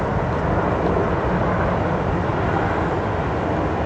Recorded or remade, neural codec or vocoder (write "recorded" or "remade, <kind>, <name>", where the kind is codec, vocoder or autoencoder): recorded